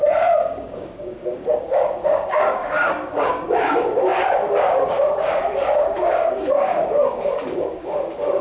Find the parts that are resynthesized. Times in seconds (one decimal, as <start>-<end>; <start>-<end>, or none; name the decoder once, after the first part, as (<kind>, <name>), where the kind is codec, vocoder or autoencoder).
0.0-8.4 (codec, DAC)